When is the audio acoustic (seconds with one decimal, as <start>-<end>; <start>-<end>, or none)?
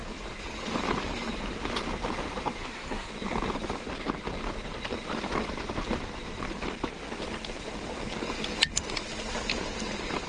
0.0-2.6; 3.1-10.3